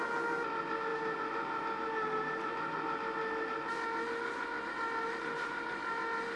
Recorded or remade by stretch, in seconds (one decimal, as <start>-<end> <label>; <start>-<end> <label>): 0.0-6.4 recorded

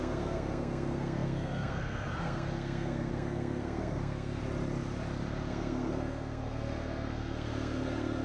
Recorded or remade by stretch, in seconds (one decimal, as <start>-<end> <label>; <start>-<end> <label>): 0.0-4.4 remade; 4.4-5.5 recorded; 5.5-8.2 remade

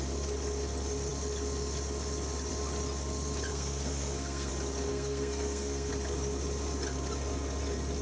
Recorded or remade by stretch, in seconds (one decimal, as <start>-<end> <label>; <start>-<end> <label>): 0.0-3.5 recorded; 3.5-4.5 remade; 4.5-4.9 recorded; 4.9-5.9 remade; 5.9-8.0 recorded

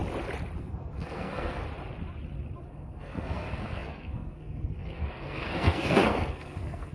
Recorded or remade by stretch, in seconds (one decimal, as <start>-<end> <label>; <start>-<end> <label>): 0.0-0.6 recorded; 0.6-1.6 remade; 1.6-2.7 recorded; 2.7-6.9 remade

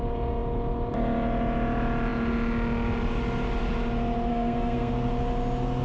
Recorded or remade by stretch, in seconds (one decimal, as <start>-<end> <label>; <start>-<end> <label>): 0.0-4.3 recorded; 4.3-4.9 remade; 4.9-5.8 recorded

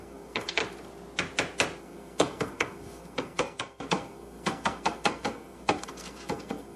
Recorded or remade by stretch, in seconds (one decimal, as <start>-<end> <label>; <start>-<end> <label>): 0.0-0.6 remade; 0.6-1.8 recorded; 1.8-6.8 remade

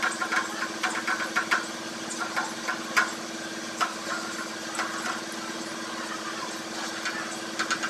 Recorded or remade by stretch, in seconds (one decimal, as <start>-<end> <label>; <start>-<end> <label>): 0.0-7.9 recorded

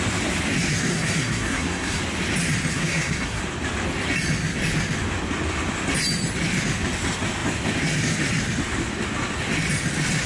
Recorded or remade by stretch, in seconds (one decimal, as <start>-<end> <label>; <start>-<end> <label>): 0.0-0.9 recorded; 0.9-2.0 remade; 2.0-2.7 recorded; 2.7-3.4 remade; 3.4-10.3 recorded